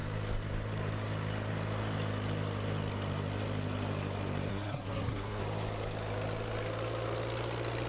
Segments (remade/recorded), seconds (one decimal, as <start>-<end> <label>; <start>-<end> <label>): 0.0-4.5 recorded; 4.5-5.4 remade; 5.4-7.9 recorded